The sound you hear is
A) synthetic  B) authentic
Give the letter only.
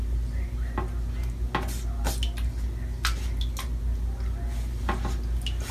B